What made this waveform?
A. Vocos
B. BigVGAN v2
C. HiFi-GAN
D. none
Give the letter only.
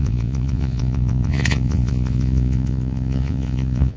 A